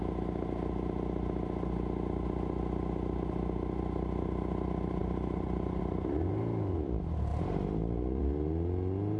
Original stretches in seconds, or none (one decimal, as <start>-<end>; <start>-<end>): 0.0-5.0; 5.8-7.3; 8.2-9.2